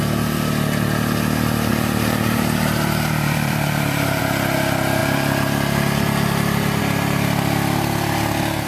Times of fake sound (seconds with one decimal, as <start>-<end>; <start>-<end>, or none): 1.7-4.2